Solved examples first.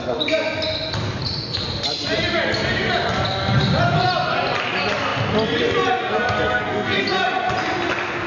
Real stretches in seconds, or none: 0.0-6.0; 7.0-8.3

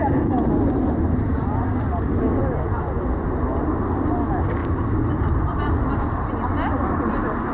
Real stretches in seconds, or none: 0.0-4.6; 5.8-7.5

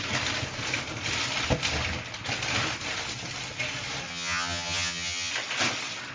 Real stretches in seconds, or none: 0.0-4.1; 5.3-6.1

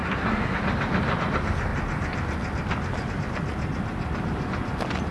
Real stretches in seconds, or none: 0.6-5.1